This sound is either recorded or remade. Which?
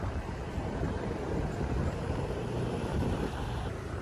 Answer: remade